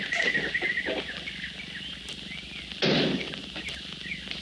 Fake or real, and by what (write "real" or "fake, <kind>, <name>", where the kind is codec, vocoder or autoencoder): real